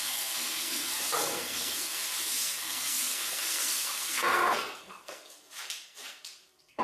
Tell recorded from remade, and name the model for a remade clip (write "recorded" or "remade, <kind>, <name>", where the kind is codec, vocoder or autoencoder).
remade, codec, SNAC